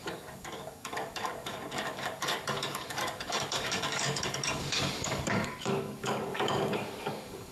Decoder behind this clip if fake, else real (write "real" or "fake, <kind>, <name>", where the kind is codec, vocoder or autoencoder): fake, codec, DAC